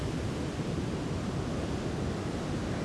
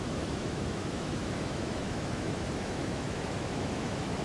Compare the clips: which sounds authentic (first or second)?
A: first